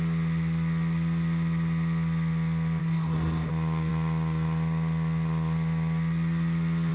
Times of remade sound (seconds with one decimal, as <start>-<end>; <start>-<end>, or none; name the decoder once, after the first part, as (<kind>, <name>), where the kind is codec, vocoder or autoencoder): 2.8-3.5 (codec, SNAC)